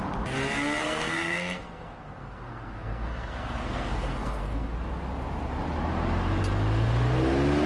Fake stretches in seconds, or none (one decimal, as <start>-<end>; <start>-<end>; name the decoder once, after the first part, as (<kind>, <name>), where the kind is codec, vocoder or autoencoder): 0.8-4.7 (codec, SNAC)